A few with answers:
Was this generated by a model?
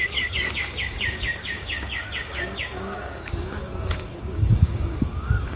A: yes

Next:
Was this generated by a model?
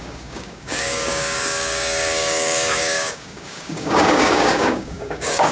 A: yes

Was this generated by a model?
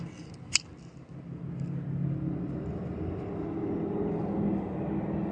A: no